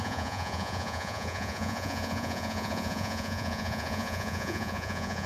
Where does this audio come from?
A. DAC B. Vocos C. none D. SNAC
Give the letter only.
B